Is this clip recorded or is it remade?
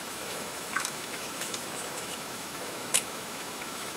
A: remade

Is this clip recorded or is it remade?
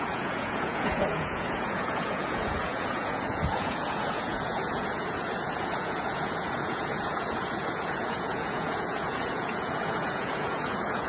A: remade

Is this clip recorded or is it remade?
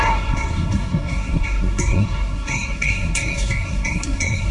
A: remade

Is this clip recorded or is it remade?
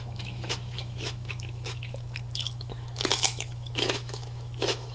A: remade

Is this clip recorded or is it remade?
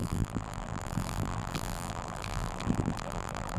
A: remade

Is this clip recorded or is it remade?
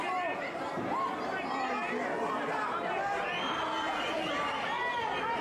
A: recorded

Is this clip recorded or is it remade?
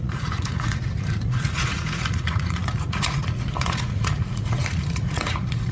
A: remade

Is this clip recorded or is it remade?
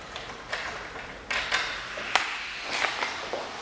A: recorded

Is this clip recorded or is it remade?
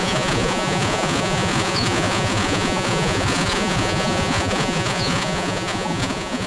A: remade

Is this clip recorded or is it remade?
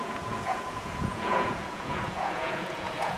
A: remade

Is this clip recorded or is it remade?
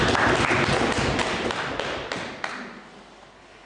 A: recorded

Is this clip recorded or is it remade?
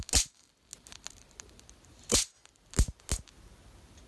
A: recorded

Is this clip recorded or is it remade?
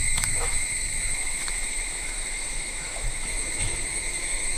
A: remade